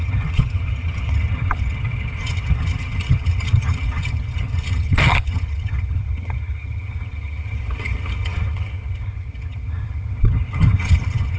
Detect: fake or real fake